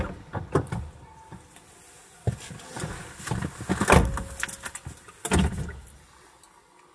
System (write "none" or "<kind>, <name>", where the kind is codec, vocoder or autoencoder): none